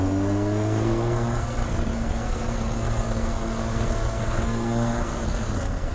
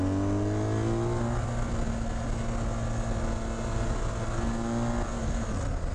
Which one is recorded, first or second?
second